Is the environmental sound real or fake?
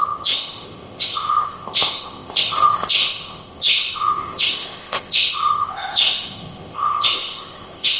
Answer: fake